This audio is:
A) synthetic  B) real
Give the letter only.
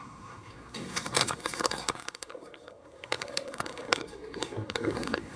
A